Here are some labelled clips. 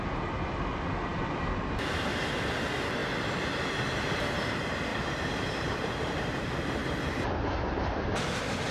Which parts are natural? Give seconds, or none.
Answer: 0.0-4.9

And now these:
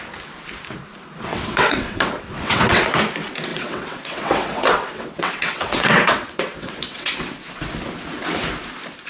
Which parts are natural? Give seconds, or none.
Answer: 0.0-1.3; 2.9-3.5; 7.3-9.1

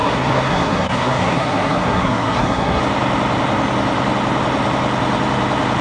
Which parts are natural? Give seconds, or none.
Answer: 2.8-5.8